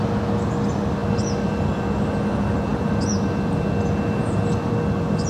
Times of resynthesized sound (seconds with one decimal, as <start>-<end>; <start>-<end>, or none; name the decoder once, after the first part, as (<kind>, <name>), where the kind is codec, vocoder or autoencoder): none